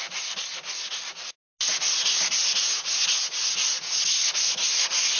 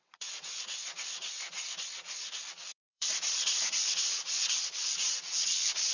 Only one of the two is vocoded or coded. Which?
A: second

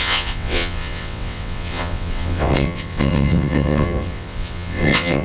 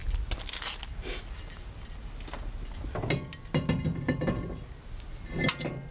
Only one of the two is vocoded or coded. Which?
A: first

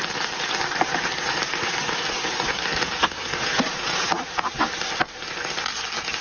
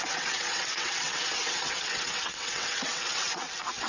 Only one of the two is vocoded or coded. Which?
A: second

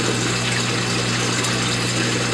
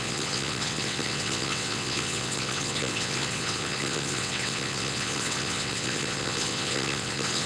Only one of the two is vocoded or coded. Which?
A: second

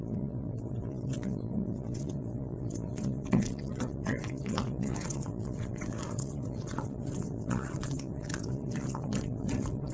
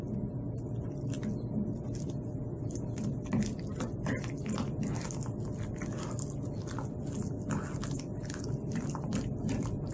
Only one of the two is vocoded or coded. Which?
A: first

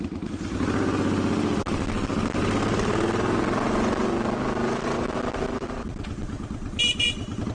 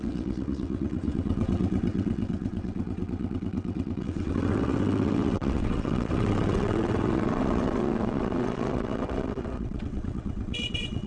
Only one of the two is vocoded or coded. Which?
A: second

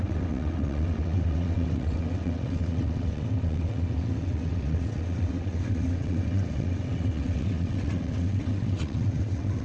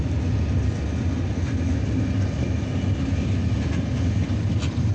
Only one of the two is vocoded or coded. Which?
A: first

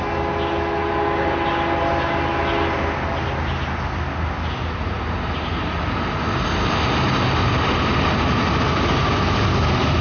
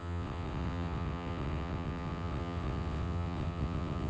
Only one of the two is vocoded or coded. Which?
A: second